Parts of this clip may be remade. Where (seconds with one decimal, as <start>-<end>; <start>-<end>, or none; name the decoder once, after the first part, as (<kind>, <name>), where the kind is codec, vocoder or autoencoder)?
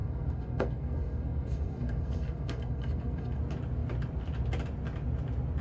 0.0-3.4 (codec, SNAC)